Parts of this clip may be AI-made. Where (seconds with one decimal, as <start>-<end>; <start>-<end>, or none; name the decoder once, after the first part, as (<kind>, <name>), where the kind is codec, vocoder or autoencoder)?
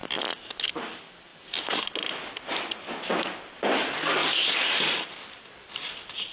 none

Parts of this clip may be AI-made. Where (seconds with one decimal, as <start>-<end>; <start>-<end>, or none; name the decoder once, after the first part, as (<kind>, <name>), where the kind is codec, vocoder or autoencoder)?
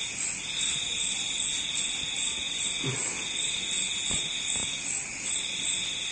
none